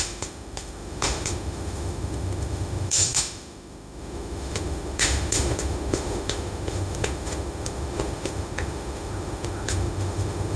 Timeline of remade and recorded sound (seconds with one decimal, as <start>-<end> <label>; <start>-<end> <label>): 0.0-10.6 remade